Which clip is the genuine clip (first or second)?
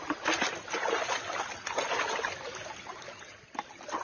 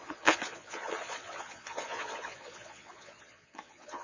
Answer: first